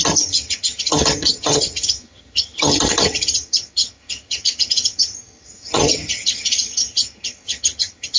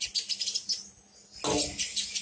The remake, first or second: first